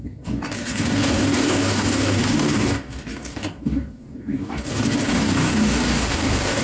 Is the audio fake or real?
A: fake